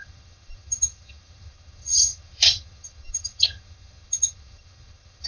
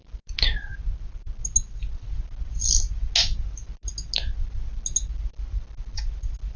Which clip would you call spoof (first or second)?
first